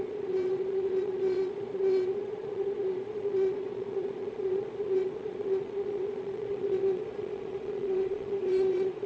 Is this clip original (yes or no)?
no